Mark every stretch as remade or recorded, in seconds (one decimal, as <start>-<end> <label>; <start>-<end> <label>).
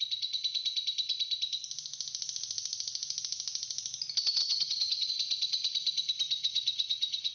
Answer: 0.0-4.4 recorded; 4.4-5.1 remade; 5.1-6.4 recorded; 6.4-7.3 remade